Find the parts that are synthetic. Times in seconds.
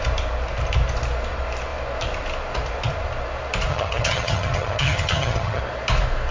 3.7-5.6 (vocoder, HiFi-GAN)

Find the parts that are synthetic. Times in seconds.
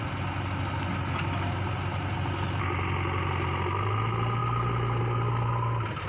none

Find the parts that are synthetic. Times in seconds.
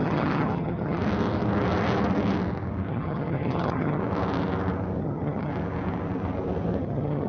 0.0-1.0 (vocoder, HiFi-GAN); 2.9-4.0; 5.0-5.5; 6.8-7.3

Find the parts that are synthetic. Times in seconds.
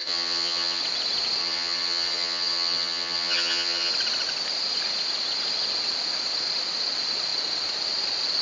0.0-0.8 (vocoder, HiFi-GAN); 1.4-3.9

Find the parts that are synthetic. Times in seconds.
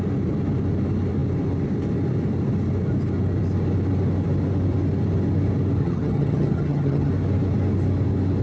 5.8-7.1 (vocoder, HiFi-GAN)